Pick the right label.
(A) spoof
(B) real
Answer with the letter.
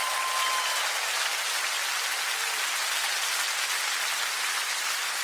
B